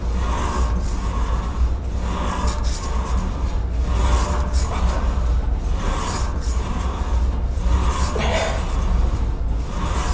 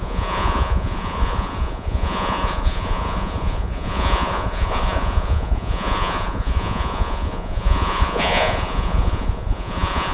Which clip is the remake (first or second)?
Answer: second